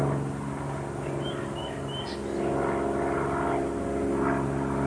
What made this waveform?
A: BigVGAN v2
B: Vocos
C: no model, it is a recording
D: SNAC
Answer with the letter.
C